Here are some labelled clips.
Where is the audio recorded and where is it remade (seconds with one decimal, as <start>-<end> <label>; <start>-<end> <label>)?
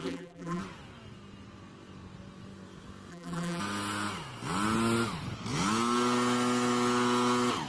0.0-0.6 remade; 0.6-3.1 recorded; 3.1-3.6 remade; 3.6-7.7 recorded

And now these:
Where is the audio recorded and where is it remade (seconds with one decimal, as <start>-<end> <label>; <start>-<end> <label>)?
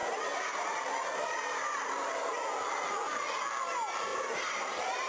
0.0-2.3 remade; 2.3-4.1 recorded; 4.1-5.1 remade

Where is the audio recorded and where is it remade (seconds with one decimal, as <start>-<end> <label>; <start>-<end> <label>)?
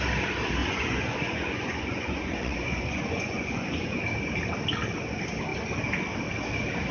0.0-0.6 recorded; 0.6-4.0 remade; 4.0-6.9 recorded